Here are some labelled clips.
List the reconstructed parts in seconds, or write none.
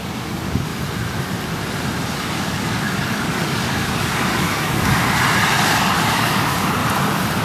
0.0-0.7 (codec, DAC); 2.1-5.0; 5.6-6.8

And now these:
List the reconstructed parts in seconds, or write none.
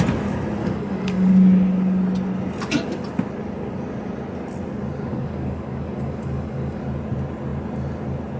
0.6-1.3 (codec, DAC); 5.1-6.8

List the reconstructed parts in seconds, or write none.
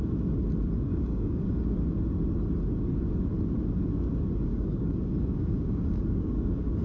0.9-1.5 (codec, DAC); 4.5-6.8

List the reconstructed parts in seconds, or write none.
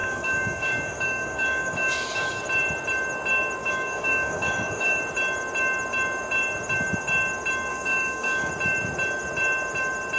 0.0-2.4 (codec, DAC); 3.6-5.0; 7.7-8.5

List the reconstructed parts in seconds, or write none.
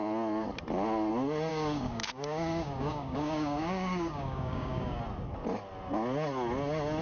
1.5-5.0 (codec, DAC)